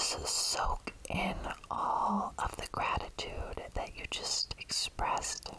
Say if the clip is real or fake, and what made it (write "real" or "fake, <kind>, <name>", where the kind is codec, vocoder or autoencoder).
real